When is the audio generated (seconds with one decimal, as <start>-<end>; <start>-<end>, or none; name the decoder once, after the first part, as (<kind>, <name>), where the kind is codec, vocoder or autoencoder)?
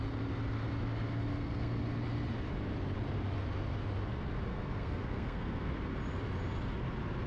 1.3-1.8 (codec, SNAC); 4.5-5.7